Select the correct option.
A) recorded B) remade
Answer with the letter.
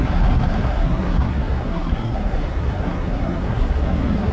B